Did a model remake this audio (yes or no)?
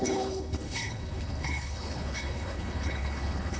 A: yes